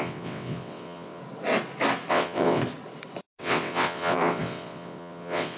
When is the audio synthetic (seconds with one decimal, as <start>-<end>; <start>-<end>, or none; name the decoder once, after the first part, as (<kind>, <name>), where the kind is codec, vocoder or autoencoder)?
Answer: 0.0-1.2 (vocoder, WaveNeXt); 2.1-2.6; 3.4-5.6

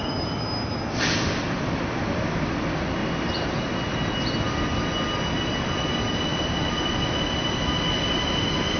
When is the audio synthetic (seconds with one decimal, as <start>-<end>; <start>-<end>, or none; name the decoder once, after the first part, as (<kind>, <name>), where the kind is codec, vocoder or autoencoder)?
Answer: 3.0-3.6 (vocoder, BigVGAN v2)

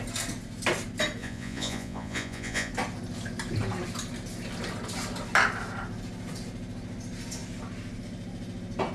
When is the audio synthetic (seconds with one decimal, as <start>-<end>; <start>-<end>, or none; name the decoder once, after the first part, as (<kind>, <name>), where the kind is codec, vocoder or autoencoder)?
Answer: 1.2-2.7 (vocoder, Vocos)

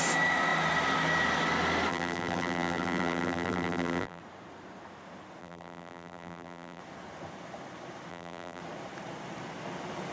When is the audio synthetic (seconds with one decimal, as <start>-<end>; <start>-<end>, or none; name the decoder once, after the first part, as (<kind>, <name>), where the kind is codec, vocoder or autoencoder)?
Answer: 1.9-4.2 (vocoder, BigVGAN v2); 5.4-6.8; 8.1-8.6

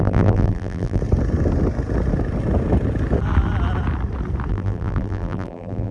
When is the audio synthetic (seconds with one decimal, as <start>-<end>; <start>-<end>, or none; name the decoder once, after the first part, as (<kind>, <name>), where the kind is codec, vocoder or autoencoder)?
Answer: 0.0-1.0 (vocoder, BigVGAN v2); 4.5-5.9